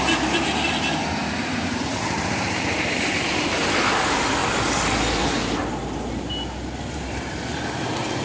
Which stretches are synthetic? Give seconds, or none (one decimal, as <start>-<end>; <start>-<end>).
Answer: 0.0-4.4; 5.1-5.6; 6.8-8.2